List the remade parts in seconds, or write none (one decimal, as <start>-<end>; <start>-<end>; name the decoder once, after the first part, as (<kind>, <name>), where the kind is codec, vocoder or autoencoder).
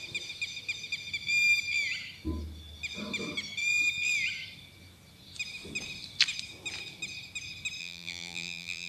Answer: 7.8-8.9 (vocoder, BigVGAN v2)